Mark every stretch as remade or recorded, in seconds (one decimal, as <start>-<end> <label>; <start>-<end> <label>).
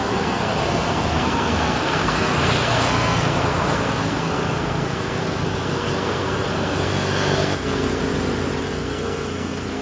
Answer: 0.0-8.0 remade; 8.0-8.6 recorded; 8.6-9.8 remade